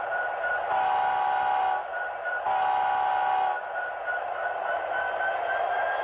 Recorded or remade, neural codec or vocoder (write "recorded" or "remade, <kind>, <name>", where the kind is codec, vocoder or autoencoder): recorded